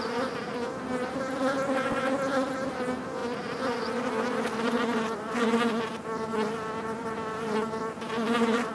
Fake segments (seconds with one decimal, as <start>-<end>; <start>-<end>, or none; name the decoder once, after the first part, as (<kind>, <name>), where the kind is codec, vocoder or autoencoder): none